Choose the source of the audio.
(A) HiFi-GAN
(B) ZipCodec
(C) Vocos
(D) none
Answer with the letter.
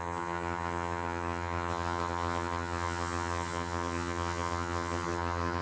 A